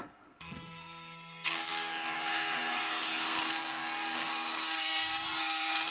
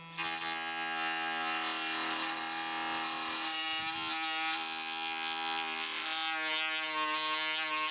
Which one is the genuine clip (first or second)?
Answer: second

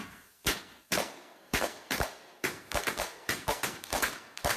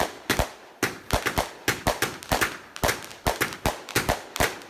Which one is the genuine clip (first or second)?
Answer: second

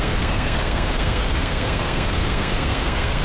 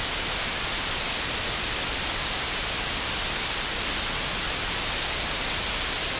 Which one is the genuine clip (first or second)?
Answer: second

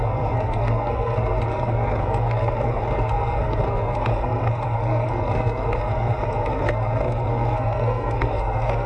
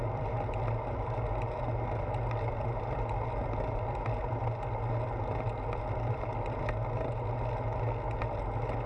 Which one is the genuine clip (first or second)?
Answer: second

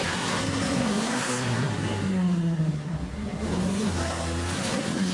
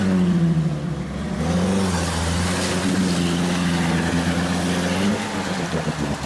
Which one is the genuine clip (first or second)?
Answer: second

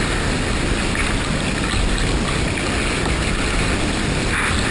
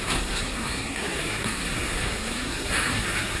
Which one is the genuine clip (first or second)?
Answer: first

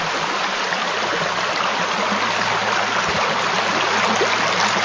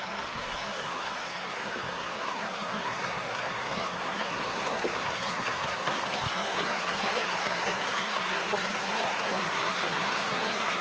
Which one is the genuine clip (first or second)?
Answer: first